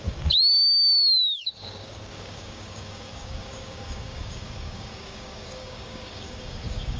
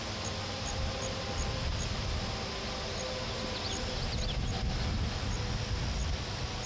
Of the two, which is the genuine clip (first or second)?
second